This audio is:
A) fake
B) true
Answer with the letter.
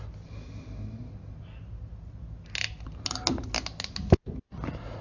B